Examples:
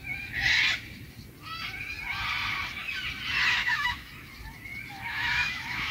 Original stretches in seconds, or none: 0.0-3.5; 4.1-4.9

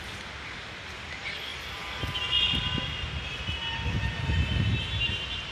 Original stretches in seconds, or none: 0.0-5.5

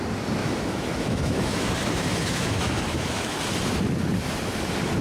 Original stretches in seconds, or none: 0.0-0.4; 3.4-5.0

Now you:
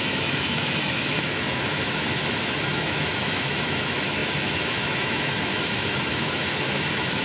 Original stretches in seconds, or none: none

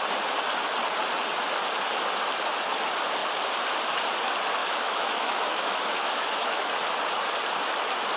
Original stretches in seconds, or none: 0.0-4.6; 6.7-8.2

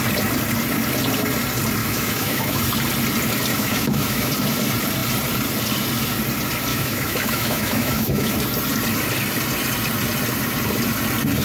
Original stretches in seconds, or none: 0.0-1.8; 2.6-3.5; 4.3-6.7; 8.3-11.4

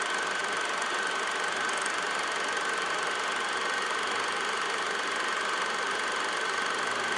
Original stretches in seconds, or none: 0.0-7.2